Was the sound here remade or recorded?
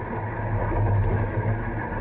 recorded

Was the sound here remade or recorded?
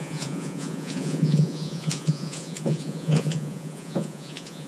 remade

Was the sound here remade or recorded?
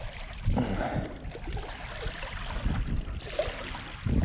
recorded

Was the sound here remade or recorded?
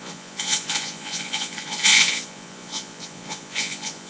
remade